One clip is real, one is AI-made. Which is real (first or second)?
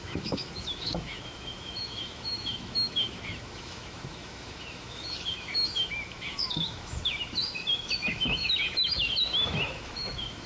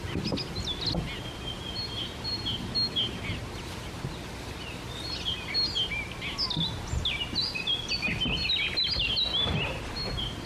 second